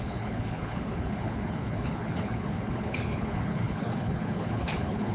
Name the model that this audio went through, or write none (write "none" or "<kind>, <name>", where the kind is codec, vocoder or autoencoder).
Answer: codec, HILCodec